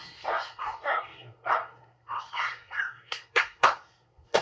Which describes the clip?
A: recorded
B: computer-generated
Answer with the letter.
B